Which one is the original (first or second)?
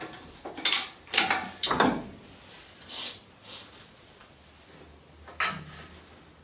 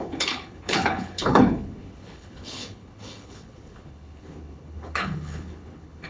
first